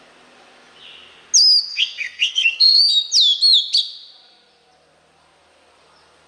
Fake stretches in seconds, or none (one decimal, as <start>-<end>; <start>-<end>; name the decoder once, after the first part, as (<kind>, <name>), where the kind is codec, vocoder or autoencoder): 1.7-2.8 (codec, SNAC)